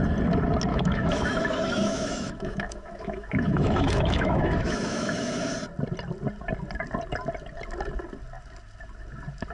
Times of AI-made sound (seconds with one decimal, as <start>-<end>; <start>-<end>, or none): 0.7-5.4